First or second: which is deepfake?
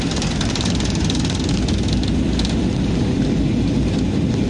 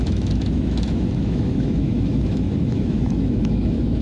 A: second